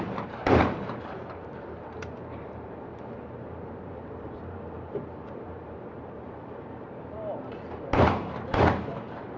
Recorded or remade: remade